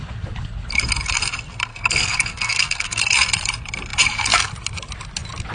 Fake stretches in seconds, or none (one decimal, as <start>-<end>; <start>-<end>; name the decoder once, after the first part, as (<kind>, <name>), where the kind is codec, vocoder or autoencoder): 1.7-3.0 (codec, SNAC)